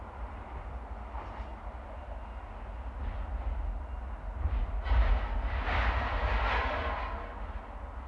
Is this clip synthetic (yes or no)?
no